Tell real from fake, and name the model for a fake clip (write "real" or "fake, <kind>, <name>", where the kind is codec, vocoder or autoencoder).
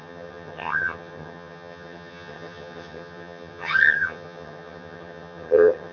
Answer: fake, vocoder, HiFi-GAN